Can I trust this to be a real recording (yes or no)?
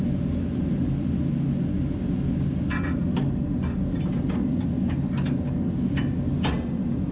yes